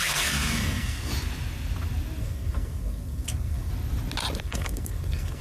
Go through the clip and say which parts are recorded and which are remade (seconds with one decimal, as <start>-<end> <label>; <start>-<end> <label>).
0.0-1.1 remade; 1.1-2.2 recorded; 2.2-3.7 remade; 3.7-4.4 recorded; 4.4-5.4 remade